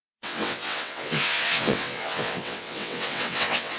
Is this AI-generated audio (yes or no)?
yes